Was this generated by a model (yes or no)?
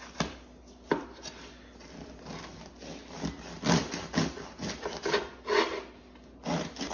no